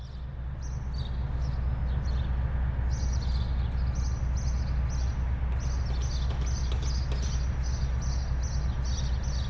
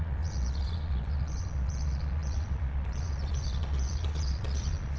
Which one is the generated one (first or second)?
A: second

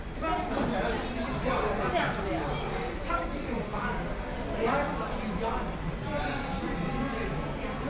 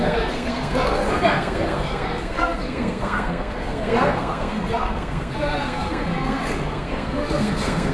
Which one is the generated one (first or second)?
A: second